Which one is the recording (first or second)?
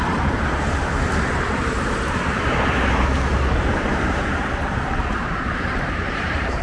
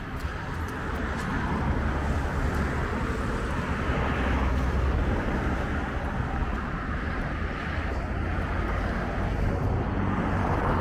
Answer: second